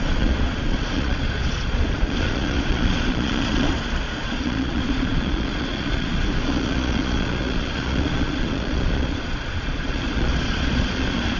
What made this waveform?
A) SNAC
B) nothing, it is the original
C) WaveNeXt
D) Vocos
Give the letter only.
D